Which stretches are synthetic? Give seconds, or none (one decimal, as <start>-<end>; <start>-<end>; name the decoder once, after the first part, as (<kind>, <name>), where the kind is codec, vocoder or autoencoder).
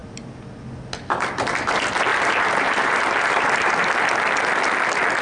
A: 2.1-3.9 (vocoder, BigVGAN v2)